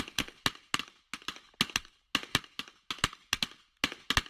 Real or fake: real